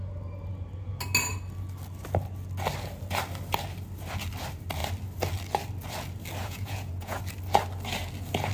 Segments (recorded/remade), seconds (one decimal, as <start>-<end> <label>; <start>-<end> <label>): 0.0-6.4 recorded; 6.4-7.2 remade; 7.2-8.5 recorded